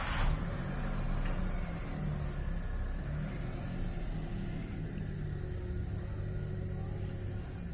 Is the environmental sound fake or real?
real